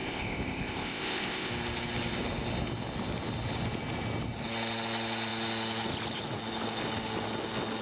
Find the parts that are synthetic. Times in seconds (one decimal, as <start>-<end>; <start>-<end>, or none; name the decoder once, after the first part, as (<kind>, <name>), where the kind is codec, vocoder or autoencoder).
0.0-1.5 (codec, ZipCodec)